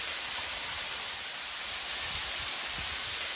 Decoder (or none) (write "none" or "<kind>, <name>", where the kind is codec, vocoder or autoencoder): none